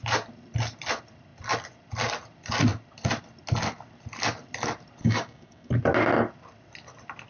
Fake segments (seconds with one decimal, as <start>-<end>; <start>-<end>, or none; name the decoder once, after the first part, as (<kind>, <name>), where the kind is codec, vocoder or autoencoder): 5.0-5.7 (codec, DAC)